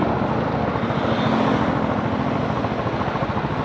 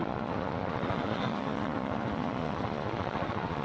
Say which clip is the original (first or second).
first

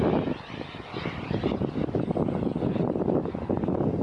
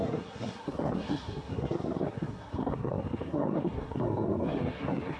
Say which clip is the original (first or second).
first